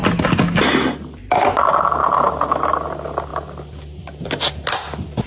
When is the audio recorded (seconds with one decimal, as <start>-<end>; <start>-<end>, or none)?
0.0-5.3